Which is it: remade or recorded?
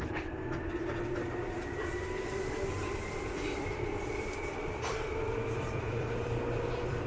remade